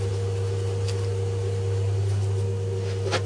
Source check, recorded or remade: recorded